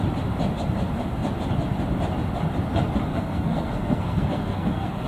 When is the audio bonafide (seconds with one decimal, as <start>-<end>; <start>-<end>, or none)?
0.0-3.1